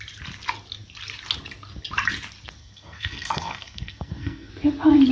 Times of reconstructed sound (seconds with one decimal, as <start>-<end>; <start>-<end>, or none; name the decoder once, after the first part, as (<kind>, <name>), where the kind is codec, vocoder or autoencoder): 2.6-4.5 (codec, SNAC)